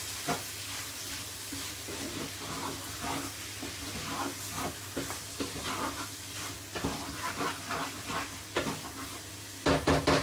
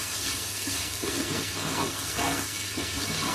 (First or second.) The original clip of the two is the first